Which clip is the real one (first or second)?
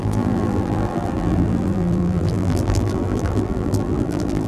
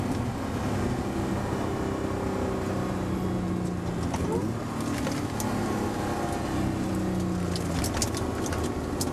second